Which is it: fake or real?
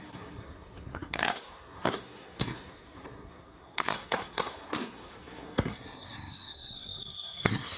fake